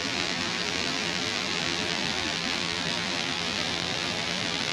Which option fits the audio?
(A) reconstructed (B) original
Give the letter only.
A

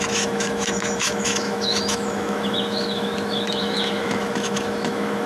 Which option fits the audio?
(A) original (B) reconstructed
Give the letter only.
B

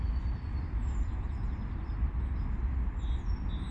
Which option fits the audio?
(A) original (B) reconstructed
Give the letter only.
A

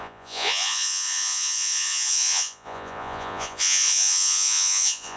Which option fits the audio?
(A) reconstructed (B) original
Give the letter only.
A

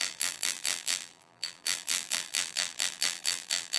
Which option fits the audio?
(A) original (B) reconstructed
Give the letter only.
B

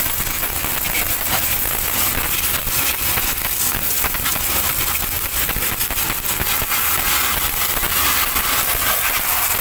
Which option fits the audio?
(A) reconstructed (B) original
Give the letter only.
B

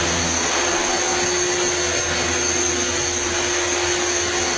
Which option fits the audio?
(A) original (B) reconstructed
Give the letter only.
A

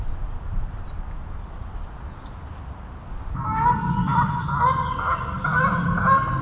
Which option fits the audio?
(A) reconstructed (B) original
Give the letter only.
B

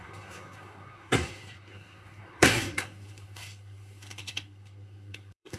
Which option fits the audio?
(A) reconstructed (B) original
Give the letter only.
A